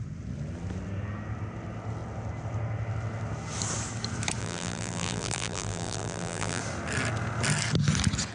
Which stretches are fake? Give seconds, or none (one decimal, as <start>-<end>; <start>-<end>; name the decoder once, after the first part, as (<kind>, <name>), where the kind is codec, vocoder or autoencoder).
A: 4.4-6.6 (vocoder, BigVGAN v2)